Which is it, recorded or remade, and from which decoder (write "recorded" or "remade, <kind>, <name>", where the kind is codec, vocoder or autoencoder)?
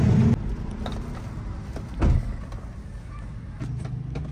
recorded